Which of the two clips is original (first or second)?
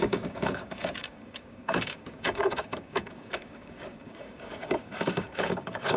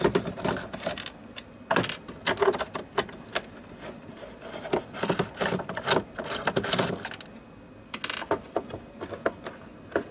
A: second